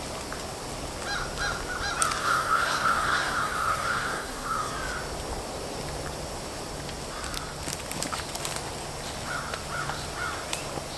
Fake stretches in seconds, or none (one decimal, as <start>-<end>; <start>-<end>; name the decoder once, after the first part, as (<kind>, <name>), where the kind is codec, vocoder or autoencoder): 2.2-4.7 (codec, SNAC)